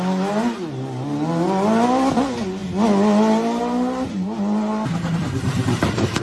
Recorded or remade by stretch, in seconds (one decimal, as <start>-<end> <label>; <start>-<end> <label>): 0.0-4.7 recorded; 4.7-6.2 remade